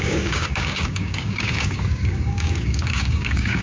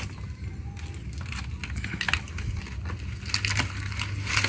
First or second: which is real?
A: second